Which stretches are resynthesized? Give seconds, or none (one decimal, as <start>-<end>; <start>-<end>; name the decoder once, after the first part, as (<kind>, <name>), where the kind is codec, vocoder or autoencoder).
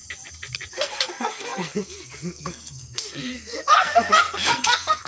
0.7-5.1 (codec, SNAC)